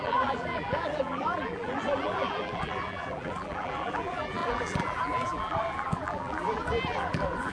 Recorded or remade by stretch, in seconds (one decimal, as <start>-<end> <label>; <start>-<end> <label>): 0.0-7.5 remade